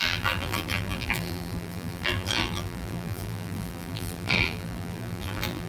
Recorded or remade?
remade